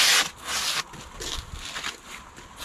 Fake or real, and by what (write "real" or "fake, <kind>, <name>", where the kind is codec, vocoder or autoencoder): real